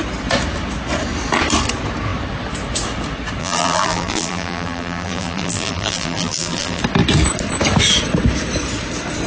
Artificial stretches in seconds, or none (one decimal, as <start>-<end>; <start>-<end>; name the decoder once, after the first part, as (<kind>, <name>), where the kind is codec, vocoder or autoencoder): 3.4-6.8 (vocoder, BigVGAN v2)